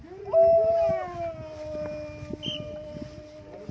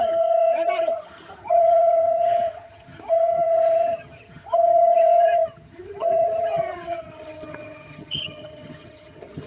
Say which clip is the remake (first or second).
second